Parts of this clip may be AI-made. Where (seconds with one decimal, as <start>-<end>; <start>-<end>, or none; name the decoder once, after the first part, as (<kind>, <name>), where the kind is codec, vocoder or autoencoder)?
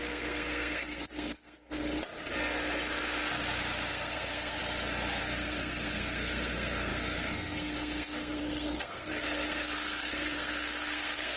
0.0-1.8 (codec, SNAC); 3.9-4.6; 5.2-11.4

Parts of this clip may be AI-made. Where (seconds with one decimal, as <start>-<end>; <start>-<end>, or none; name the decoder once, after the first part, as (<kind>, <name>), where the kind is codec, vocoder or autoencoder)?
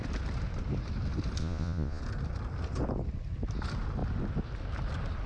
1.4-2.0 (vocoder, Vocos)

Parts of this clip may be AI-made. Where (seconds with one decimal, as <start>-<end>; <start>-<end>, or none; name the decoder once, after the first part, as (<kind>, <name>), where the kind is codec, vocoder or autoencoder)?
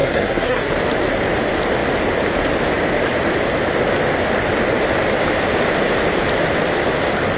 0.0-0.7 (codec, SNAC)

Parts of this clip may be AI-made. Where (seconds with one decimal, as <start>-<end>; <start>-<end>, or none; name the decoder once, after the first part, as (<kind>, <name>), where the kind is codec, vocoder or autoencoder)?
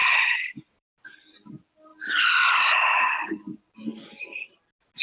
0.0-1.5 (vocoder, BigVGAN v2); 1.9-2.6; 3.9-4.5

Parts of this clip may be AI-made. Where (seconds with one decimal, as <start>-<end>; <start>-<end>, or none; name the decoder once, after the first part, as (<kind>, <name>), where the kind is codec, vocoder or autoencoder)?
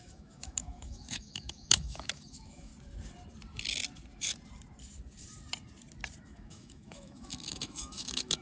0.0-2.7 (autoencoder, DAC-VAE); 6.2-8.4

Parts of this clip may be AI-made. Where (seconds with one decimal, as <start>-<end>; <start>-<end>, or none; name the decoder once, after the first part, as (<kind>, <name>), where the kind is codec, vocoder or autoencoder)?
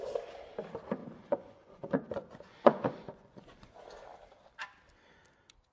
1.0-3.8 (vocoder, Vocos)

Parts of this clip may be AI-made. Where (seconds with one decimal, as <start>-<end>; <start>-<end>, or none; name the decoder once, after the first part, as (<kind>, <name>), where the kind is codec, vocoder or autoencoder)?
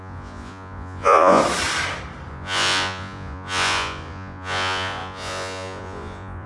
0.0-1.4 (vocoder, Vocos); 2.3-6.5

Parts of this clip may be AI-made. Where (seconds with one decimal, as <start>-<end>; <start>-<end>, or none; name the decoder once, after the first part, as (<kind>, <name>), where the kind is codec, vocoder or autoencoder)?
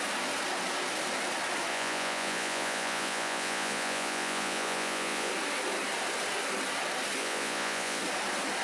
1.7-5.3 (vocoder, Vocos); 7.2-8.0